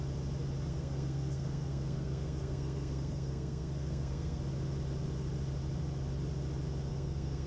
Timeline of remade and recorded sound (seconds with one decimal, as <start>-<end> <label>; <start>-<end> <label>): 0.0-0.7 recorded; 0.7-4.4 remade; 4.4-6.9 recorded; 6.9-7.5 remade